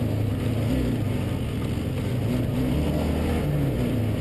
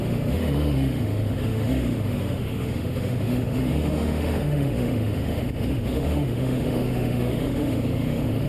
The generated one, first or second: second